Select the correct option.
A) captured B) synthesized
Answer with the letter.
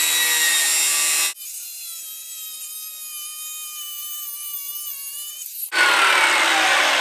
A